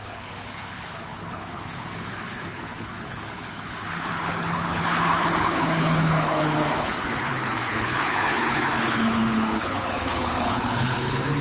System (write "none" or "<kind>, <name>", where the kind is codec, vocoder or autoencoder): codec, HILCodec